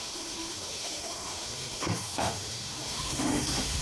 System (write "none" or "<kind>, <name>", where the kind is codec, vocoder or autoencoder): autoencoder, DAC-VAE